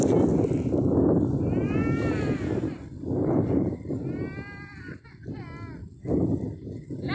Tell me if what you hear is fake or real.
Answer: real